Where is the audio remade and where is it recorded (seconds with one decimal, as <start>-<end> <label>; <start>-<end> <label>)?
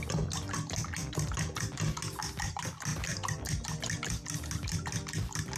0.0-5.6 recorded